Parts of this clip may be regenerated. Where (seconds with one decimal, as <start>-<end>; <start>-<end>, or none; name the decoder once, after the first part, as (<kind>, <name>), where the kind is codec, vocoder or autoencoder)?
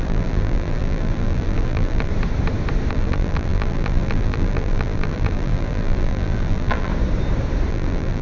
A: 0.0-2.1 (vocoder, BigVGAN v2); 2.9-6.9; 7.7-8.2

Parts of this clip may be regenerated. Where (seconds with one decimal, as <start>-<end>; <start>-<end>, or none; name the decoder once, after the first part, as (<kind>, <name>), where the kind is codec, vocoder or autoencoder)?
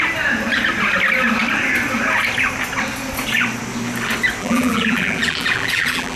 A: 4.4-6.2 (vocoder, BigVGAN v2)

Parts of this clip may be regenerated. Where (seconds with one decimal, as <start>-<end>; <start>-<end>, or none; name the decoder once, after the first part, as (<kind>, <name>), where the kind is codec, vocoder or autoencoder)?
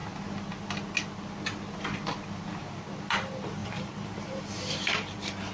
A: 3.6-5.5 (vocoder, BigVGAN v2)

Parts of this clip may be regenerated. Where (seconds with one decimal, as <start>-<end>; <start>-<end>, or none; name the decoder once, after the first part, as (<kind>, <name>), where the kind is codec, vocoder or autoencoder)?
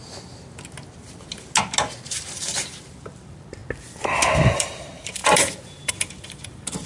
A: 2.1-3.6 (vocoder, BigVGAN v2); 4.5-6.9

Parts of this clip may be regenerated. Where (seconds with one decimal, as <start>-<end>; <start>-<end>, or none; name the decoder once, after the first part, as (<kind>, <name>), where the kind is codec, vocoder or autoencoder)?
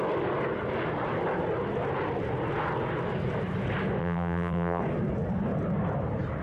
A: 4.0-4.8 (vocoder, BigVGAN v2)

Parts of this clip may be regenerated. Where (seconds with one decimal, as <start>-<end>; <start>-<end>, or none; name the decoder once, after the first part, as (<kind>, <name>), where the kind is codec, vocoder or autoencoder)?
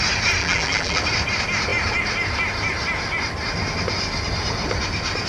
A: 0.4-1.0 (vocoder, BigVGAN v2)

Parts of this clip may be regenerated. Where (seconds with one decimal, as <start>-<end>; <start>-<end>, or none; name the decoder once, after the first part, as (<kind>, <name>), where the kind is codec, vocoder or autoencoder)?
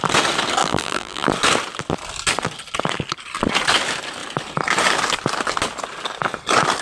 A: 0.6-1.3 (vocoder, BigVGAN v2)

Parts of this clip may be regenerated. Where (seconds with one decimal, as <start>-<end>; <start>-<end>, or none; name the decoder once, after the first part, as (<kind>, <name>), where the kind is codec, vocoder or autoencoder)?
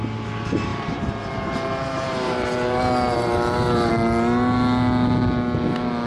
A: 0.7-3.9 (vocoder, BigVGAN v2)